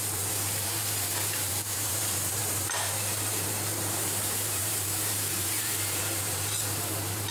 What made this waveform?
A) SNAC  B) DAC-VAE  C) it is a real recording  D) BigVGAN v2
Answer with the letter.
D